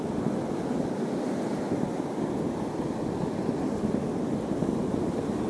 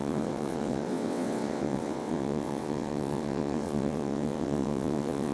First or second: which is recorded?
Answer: first